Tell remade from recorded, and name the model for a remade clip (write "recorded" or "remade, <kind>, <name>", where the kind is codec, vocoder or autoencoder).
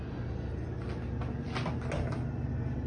recorded